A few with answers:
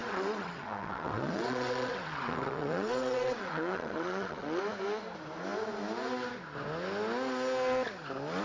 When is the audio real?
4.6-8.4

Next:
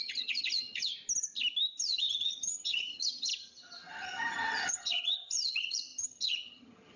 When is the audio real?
0.9-1.8

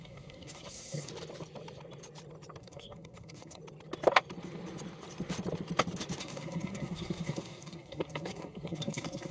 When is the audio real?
1.1-2.6; 3.6-6.2

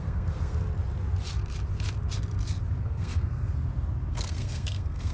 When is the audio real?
0.6-2.8; 3.5-4.1